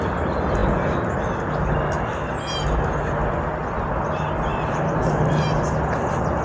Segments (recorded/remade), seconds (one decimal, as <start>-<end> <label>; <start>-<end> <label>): 0.0-4.5 recorded; 4.5-5.3 remade; 5.3-6.4 recorded